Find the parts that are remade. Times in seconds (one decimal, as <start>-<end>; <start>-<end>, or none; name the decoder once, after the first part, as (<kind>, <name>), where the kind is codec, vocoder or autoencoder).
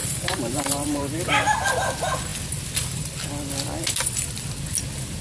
0.0-1.0 (vocoder, BigVGAN v2)